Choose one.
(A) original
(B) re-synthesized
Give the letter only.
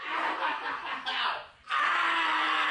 A